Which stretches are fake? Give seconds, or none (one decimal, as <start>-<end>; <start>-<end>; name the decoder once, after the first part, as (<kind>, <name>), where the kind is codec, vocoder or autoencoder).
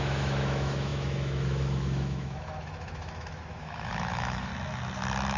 0.0-4.5 (autoencoder, DAC-VAE)